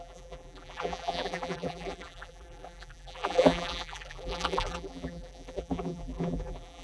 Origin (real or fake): fake